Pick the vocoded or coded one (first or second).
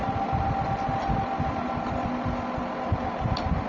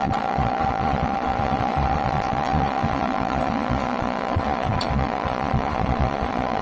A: second